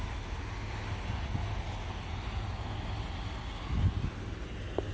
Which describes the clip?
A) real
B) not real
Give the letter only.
A